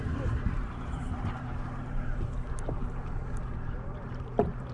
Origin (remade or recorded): remade